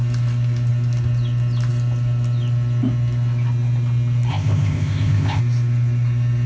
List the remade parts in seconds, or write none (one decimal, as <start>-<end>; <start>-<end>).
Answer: 4.3-5.4

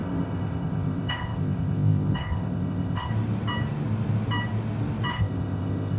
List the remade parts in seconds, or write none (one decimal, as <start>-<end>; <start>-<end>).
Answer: 0.0-3.1; 5.1-6.0

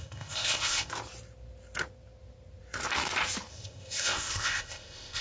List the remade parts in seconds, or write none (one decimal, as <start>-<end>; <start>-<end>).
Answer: 0.0-0.9; 3.5-5.2

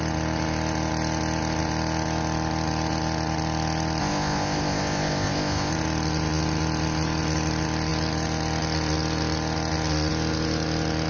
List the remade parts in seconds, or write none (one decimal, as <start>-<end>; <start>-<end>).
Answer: 4.0-5.7

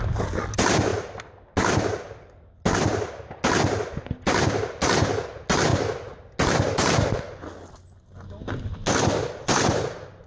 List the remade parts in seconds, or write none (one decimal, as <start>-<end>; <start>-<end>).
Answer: none